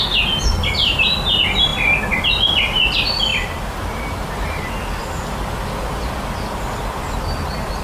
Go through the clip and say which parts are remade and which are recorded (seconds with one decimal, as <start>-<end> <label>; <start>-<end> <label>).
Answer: 0.0-1.7 recorded; 1.7-2.3 remade; 2.3-3.3 recorded; 3.3-4.3 remade; 4.3-6.0 recorded; 6.0-6.6 remade; 6.6-7.8 recorded